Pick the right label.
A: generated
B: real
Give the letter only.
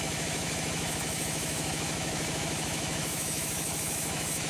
A